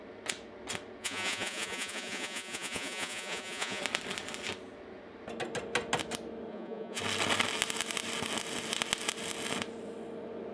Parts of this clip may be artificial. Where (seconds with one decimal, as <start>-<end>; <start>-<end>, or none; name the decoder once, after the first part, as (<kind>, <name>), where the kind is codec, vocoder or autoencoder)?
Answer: 1.0-3.8 (vocoder, Vocos); 6.5-7.0